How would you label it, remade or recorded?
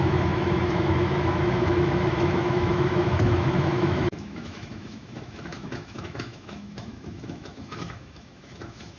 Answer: remade